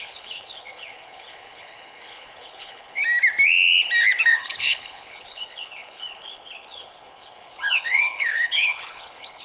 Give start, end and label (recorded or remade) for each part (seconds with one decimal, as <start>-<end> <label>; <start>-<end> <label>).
0.0-3.0 remade; 3.0-4.3 recorded; 4.3-9.4 remade